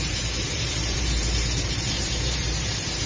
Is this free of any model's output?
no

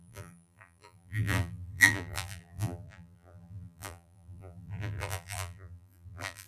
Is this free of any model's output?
no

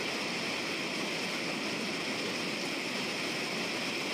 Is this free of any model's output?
yes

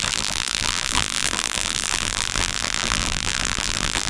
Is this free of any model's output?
no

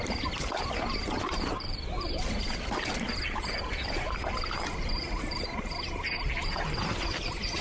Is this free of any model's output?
no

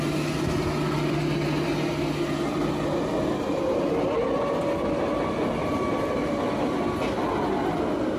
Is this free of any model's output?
yes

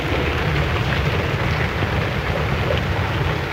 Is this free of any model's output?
yes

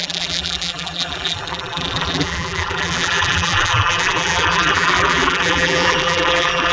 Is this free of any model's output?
no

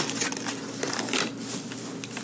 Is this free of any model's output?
yes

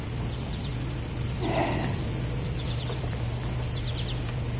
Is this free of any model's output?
no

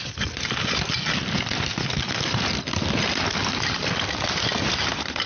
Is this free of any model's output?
yes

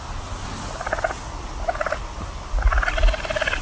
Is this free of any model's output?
yes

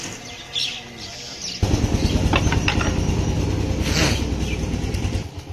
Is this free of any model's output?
yes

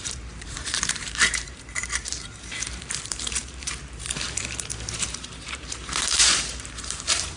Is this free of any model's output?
no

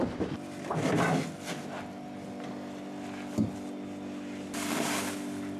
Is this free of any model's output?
yes